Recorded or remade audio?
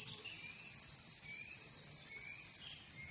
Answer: recorded